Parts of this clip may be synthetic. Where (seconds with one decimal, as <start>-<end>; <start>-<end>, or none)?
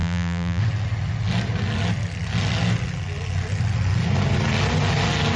0.0-0.6